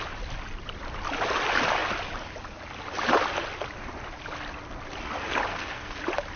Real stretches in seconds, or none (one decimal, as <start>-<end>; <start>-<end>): 0.0-5.5; 6.0-6.4